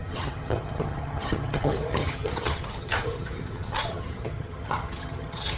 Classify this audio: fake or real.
fake